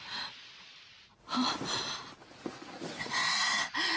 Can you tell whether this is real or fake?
real